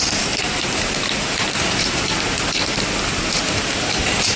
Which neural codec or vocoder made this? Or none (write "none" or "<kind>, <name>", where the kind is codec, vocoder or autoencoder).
vocoder, BigVGAN v2